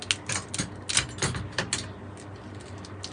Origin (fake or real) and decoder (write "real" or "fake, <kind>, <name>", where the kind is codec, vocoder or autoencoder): real